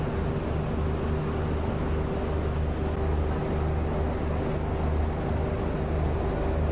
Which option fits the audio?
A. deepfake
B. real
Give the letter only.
B